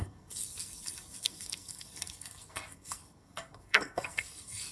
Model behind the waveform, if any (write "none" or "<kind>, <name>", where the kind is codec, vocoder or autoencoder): codec, SNAC